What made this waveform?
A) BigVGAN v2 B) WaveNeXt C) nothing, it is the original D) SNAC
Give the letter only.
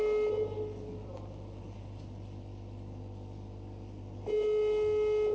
C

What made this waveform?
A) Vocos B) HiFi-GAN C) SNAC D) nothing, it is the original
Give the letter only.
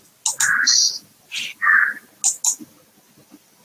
D